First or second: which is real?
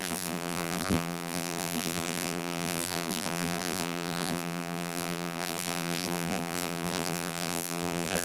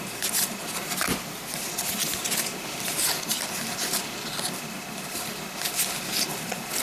second